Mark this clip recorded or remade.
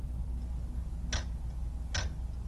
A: recorded